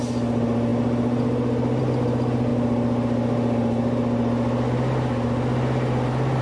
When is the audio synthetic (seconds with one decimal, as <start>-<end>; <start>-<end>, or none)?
none